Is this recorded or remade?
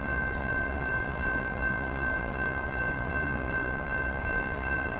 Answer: remade